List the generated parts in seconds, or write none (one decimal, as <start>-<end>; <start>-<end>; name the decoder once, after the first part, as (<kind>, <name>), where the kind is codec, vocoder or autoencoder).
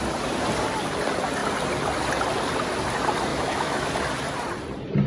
3.3-3.9 (autoencoder, DAC-VAE)